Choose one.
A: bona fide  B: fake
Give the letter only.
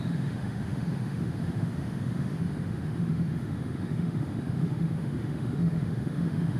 B